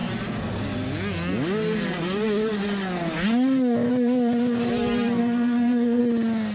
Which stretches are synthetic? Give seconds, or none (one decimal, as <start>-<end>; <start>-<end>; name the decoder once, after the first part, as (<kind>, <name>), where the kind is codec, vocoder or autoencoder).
5.2-6.0 (codec, SNAC)